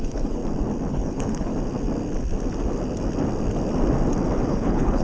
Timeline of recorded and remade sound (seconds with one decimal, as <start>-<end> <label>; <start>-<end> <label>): 0.0-0.4 remade; 0.4-0.9 recorded; 0.9-1.5 remade; 1.5-4.5 recorded; 4.5-5.0 remade